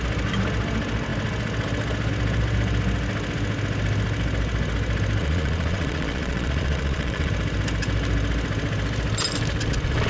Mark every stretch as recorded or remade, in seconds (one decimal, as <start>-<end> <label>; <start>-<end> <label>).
0.0-5.2 recorded; 5.2-7.3 remade; 7.3-10.1 recorded